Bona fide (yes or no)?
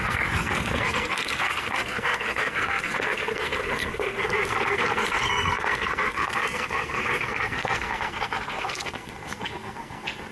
no